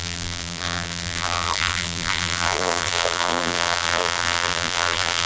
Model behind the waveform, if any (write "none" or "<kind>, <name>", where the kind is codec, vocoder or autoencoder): vocoder, BigVGAN v2